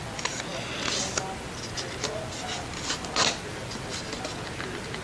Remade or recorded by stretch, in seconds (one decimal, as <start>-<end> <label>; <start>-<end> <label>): 0.0-5.0 recorded